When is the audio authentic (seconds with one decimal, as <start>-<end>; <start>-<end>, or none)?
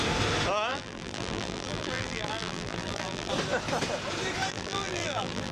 0.0-0.7; 3.3-4.5